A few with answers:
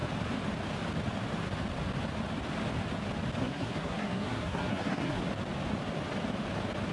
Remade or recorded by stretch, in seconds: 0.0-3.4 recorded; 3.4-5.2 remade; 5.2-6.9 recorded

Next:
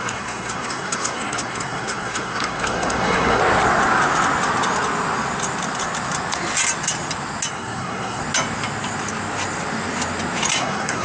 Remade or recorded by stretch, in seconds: 0.0-3.4 remade; 3.4-7.5 recorded; 7.5-8.2 remade; 8.2-10.6 recorded; 10.6-11.0 remade